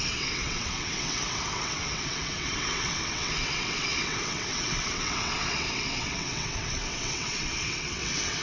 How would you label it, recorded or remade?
remade